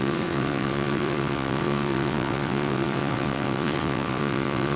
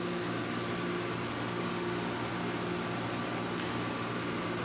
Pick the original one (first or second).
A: second